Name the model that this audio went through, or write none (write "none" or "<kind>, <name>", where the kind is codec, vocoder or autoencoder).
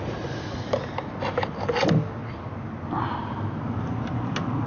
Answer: none